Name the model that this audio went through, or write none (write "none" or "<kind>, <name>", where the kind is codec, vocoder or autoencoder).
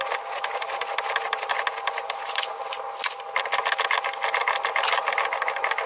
none